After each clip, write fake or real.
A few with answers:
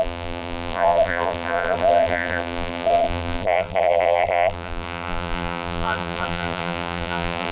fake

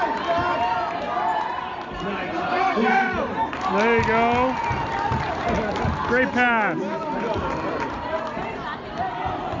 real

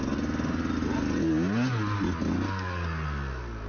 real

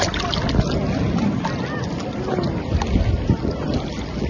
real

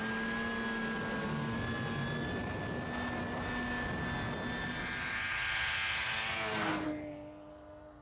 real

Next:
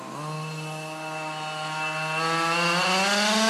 real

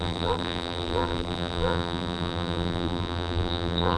fake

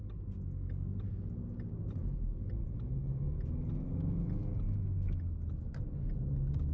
real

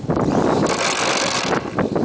real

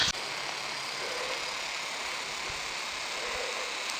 real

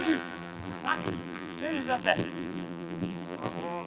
fake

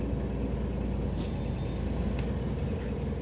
real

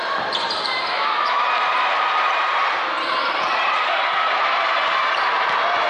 fake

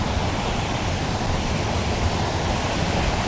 fake